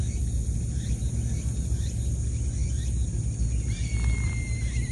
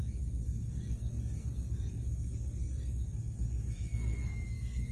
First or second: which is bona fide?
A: first